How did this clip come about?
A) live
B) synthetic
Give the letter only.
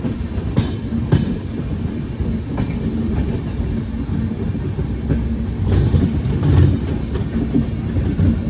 A